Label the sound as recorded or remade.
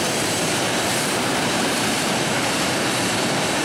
remade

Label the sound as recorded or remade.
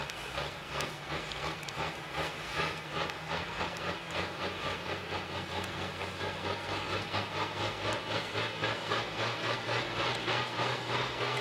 remade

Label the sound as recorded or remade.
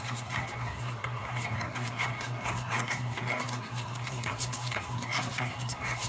remade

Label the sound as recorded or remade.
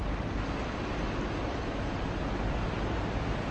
recorded